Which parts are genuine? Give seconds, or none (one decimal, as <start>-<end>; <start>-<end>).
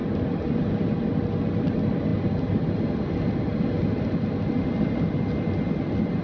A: 0.0-6.2